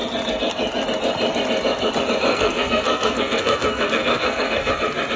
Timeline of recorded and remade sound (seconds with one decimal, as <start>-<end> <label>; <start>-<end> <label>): 0.0-2.3 recorded; 2.3-4.7 remade; 4.7-5.2 recorded